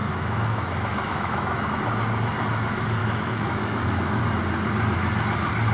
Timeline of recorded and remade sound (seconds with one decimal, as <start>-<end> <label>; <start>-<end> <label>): 0.0-1.7 remade; 1.7-3.0 recorded; 3.0-4.2 remade; 4.2-5.7 recorded

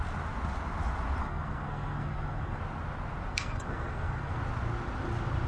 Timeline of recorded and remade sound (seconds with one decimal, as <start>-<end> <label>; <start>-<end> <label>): 0.0-1.2 recorded; 1.2-2.6 remade; 2.6-3.3 recorded; 3.3-4.4 remade; 4.4-5.5 recorded

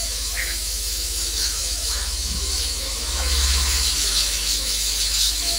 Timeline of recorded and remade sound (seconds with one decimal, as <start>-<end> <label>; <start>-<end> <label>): 0.0-5.6 remade

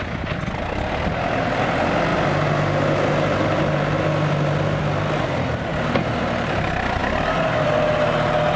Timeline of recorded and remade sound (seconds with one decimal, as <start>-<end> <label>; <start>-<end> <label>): 0.0-5.7 recorded; 5.7-6.2 remade; 6.2-7.0 recorded; 7.0-8.0 remade; 8.0-8.6 recorded